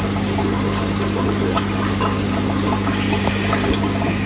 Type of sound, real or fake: real